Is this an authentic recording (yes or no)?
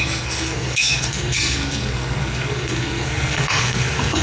no